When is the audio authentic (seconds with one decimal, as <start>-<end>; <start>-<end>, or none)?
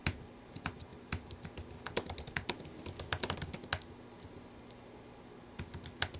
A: 0.0-6.2